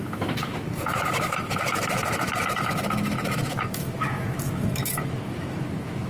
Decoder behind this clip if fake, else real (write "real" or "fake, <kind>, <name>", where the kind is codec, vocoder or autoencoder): fake, autoencoder, DAC-VAE